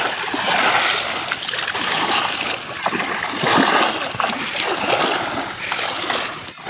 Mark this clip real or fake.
real